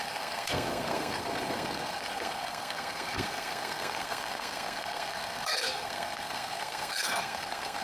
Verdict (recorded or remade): remade